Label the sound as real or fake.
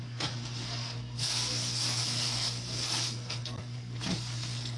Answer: fake